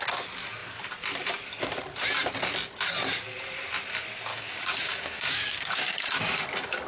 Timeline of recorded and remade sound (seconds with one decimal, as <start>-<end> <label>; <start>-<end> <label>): 0.0-4.3 recorded; 4.3-6.4 remade; 6.4-6.9 recorded